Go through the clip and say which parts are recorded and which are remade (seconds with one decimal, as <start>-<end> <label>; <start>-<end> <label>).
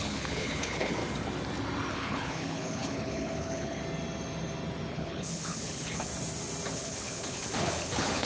0.0-1.0 remade; 1.0-1.9 recorded; 1.9-3.8 remade; 3.8-4.9 recorded; 4.9-6.1 remade; 6.1-6.7 recorded; 6.7-8.3 remade